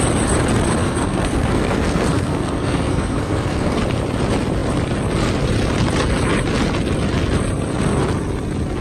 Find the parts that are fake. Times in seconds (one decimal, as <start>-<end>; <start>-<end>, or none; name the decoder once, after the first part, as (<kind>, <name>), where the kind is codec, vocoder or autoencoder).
0.8-3.8 (codec, SNAC)